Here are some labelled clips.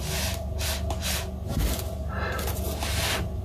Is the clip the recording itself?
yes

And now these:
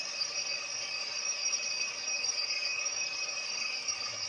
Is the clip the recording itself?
no